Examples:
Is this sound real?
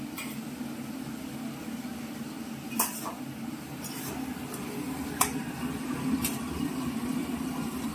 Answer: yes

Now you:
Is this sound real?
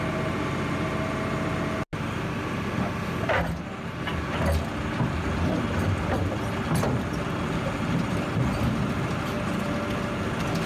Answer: yes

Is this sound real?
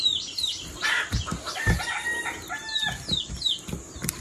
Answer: yes